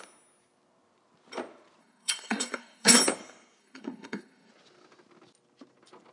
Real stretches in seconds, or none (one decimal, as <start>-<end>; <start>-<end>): 0.0-1.8; 3.0-3.6; 4.5-6.1